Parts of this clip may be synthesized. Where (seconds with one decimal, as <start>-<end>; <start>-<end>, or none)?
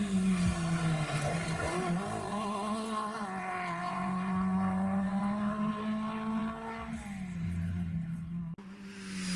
2.3-3.2; 3.8-5.7